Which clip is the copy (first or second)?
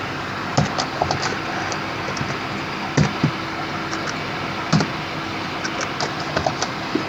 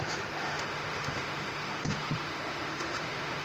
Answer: second